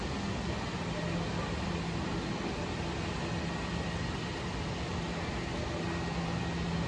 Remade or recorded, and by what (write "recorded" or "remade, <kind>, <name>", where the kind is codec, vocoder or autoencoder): recorded